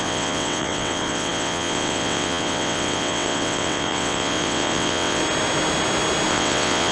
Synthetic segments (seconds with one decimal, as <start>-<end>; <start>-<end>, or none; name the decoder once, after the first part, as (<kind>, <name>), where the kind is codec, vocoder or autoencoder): 0.0-5.2 (vocoder, WaveNeXt); 6.3-6.9